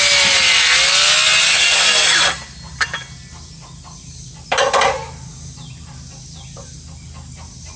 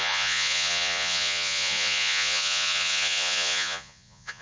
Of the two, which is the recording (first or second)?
first